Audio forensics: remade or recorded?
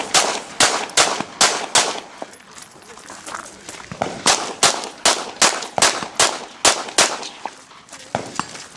recorded